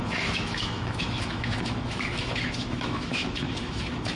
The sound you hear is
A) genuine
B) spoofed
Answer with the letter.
B